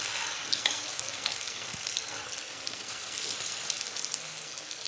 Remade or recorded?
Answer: remade